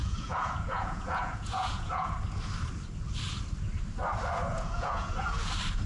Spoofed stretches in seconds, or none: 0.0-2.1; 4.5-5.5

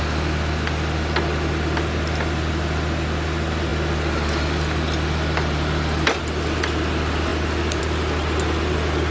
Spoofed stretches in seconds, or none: none

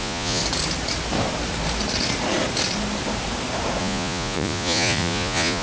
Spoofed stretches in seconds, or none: 0.0-0.4; 3.8-5.6

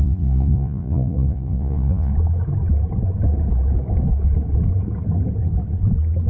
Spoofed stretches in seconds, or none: 0.0-2.1

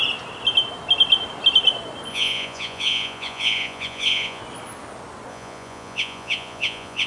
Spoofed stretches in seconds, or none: 2.1-4.4; 5.3-7.1

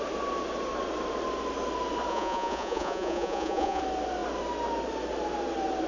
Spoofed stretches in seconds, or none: 2.1-3.8

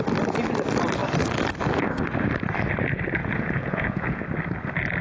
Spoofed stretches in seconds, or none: 3.2-4.2

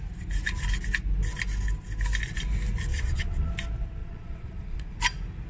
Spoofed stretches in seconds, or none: 2.9-3.5; 4.0-5.0